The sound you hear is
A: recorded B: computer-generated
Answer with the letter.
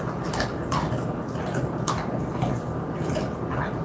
A